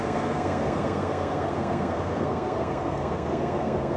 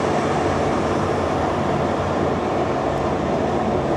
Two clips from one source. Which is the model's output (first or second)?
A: first